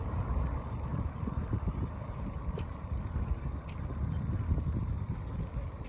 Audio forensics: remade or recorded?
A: remade